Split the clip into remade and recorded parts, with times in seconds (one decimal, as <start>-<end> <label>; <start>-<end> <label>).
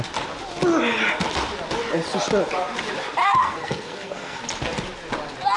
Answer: 0.0-3.2 recorded; 3.2-4.4 remade; 4.4-5.6 recorded